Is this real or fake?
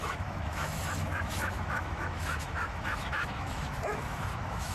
fake